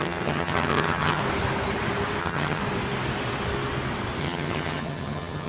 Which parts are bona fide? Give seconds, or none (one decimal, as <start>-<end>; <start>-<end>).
1.2-2.2; 2.6-4.2